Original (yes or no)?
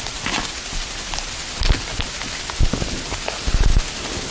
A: yes